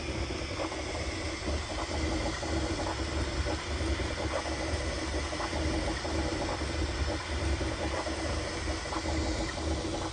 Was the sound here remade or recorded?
recorded